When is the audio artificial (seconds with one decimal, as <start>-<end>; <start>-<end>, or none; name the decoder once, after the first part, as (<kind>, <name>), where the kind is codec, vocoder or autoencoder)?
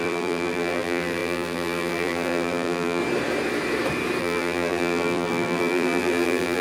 0.0-3.0 (vocoder, BigVGAN v2); 4.2-6.6